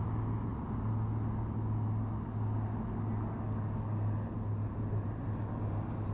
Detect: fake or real real